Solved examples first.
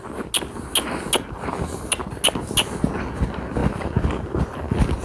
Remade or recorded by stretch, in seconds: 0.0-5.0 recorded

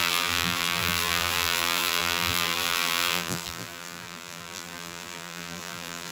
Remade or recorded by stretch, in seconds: 0.0-6.1 remade

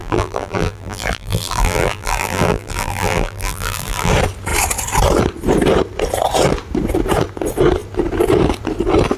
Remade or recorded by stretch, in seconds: 0.0-4.1 remade; 4.1-9.2 recorded

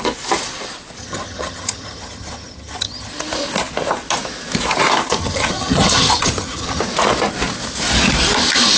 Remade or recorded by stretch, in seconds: 0.0-1.0 recorded; 1.0-3.1 remade; 3.1-5.2 recorded; 5.2-6.8 remade; 6.8-8.8 recorded

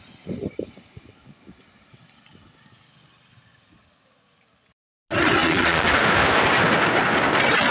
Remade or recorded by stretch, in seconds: 0.0-5.4 recorded; 5.4-5.9 remade; 5.9-7.7 recorded

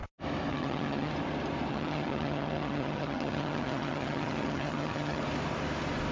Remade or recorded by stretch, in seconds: 0.0-0.5 recorded; 0.5-1.1 remade; 1.1-1.7 recorded; 1.7-5.2 remade; 5.2-6.1 recorded